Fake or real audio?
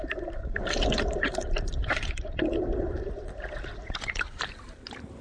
fake